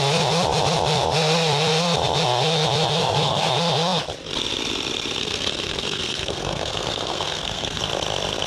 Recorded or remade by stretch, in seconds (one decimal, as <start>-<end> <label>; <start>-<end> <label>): 0.0-3.0 recorded; 3.0-3.5 remade; 3.5-5.2 recorded; 5.2-7.8 remade; 7.8-8.5 recorded